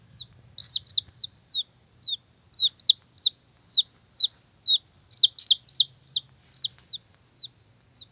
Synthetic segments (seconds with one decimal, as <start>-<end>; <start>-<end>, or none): none